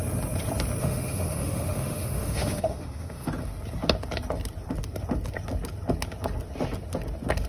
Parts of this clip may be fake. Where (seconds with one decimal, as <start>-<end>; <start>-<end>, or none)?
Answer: 0.8-3.3